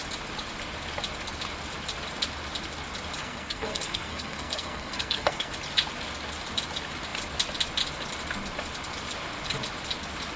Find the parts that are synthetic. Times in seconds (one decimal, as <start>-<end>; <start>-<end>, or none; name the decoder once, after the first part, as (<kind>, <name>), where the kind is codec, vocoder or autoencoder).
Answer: 3.2-5.5 (codec, SNAC)